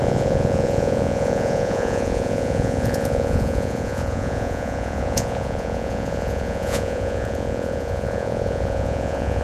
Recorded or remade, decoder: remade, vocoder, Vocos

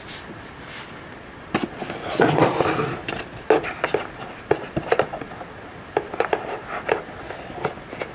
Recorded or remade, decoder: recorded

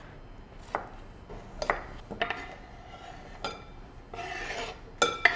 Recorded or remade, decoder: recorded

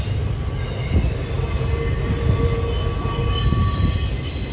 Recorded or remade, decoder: recorded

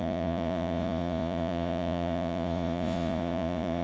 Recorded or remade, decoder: remade, vocoder, Vocos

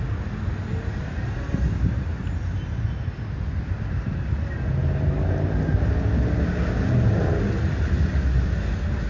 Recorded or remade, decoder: recorded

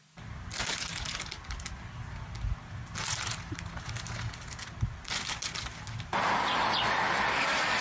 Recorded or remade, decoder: recorded